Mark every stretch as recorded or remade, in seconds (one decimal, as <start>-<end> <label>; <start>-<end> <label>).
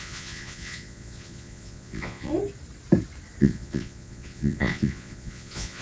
0.0-2.3 remade; 2.3-3.4 recorded; 3.4-5.8 remade